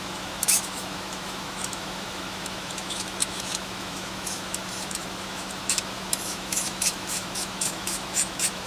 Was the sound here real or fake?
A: fake